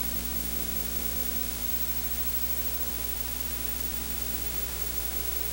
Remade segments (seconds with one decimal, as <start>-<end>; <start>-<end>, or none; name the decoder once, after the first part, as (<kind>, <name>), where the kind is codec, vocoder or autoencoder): 0.0-1.7 (autoencoder, DAC-VAE); 2.9-5.5

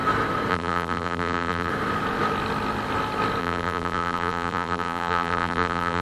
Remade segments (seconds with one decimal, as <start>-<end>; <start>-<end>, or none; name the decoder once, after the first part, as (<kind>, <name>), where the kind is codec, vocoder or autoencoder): 0.5-1.7 (vocoder, BigVGAN v2); 3.4-6.0

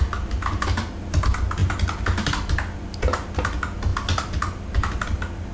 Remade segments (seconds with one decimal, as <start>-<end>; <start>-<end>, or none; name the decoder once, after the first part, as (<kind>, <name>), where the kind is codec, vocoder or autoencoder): none

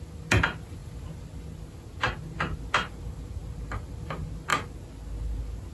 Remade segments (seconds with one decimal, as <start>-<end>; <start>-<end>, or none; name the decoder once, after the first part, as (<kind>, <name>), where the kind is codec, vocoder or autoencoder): none

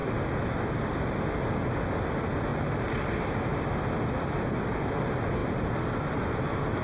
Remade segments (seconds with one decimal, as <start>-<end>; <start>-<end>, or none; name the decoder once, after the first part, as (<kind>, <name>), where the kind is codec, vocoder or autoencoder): 2.5-3.3 (vocoder, BigVGAN v2)